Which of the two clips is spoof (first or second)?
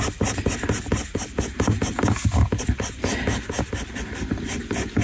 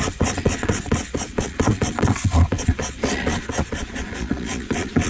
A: second